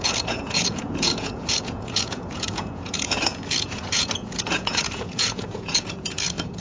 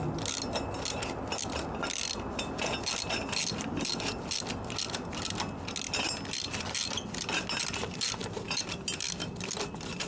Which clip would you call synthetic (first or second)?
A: first